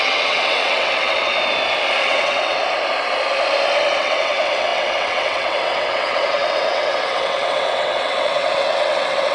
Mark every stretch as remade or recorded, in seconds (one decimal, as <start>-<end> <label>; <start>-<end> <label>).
0.0-1.3 remade; 1.3-2.0 recorded; 2.0-2.6 remade; 2.6-4.0 recorded; 4.0-9.3 remade